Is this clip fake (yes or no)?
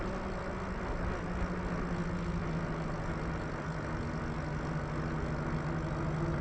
no